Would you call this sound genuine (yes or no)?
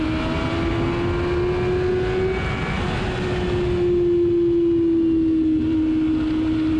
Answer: yes